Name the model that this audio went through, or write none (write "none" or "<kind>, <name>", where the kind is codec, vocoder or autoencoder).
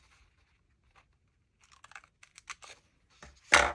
none